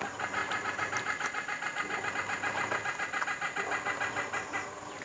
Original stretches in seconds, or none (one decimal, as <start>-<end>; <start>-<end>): 0.0-5.0